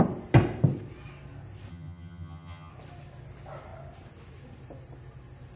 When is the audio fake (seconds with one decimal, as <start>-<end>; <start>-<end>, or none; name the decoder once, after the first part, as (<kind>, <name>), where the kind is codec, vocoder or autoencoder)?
1.7-2.7 (vocoder, HiFi-GAN)